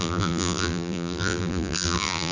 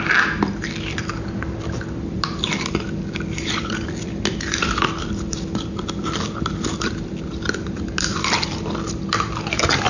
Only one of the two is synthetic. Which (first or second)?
first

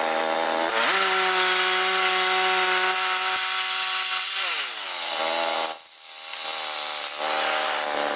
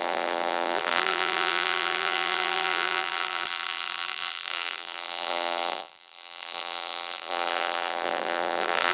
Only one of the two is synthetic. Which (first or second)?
second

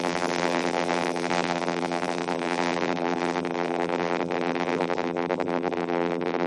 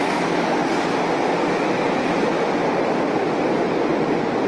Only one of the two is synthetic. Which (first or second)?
first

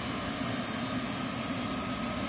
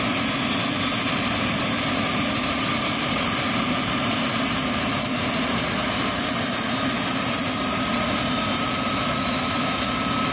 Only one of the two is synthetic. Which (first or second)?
second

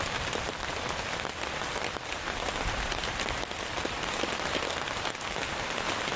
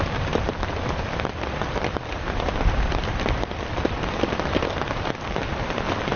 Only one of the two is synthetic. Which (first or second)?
second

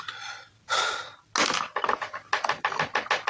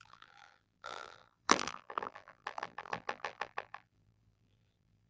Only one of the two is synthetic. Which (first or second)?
second